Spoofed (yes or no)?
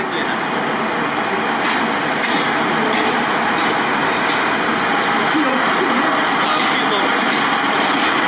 no